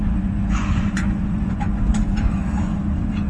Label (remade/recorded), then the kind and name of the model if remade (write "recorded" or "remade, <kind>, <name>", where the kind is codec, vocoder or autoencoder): remade, vocoder, Vocos